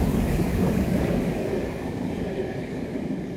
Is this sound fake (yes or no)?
yes